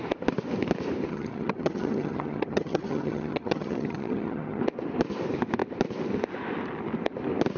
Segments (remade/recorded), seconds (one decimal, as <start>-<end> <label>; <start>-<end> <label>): 0.0-1.1 recorded; 1.1-4.6 remade; 4.6-7.6 recorded